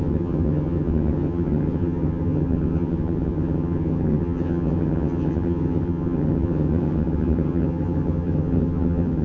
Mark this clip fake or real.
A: fake